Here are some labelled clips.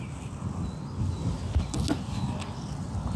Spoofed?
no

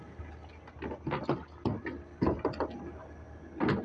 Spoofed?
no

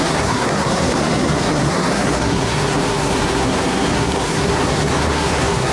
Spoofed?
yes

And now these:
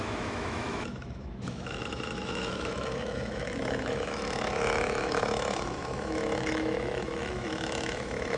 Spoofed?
yes